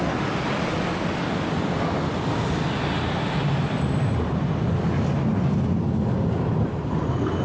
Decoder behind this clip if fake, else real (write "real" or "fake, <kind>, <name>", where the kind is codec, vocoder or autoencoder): real